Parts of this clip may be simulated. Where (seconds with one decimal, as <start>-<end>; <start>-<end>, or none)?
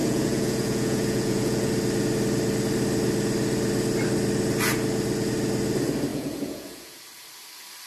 0.0-1.7; 6.1-7.0